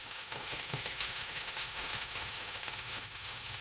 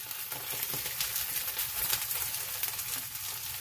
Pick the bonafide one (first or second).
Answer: second